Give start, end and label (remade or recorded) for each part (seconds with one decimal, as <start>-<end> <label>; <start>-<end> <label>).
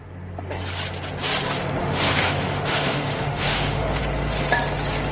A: 0.0-1.8 recorded; 1.8-4.0 remade; 4.0-5.1 recorded